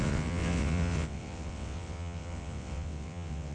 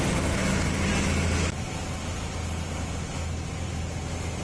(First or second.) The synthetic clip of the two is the first